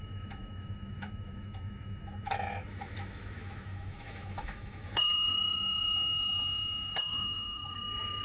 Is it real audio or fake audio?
fake